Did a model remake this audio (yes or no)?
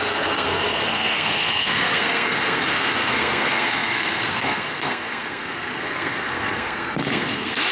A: yes